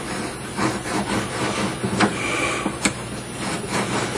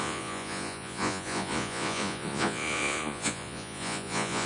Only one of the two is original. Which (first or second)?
first